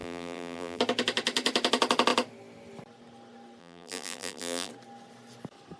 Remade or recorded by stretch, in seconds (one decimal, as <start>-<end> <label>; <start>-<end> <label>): 0.0-0.8 remade; 0.8-3.6 recorded; 3.6-4.7 remade; 4.7-5.8 recorded